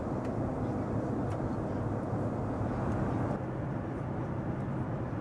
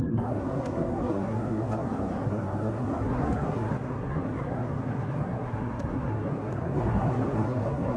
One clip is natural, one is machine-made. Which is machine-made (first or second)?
second